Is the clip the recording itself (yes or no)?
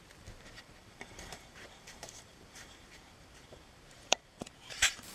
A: no